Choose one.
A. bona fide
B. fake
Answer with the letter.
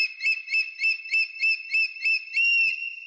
B